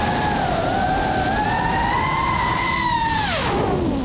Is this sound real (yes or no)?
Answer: yes